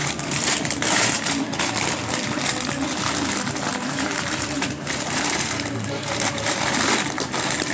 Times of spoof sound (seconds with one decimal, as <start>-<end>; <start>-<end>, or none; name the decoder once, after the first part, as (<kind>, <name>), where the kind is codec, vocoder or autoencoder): 0.0-1.3 (vocoder, BigVGAN v2); 3.7-6.7